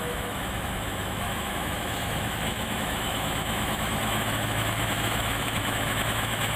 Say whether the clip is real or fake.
fake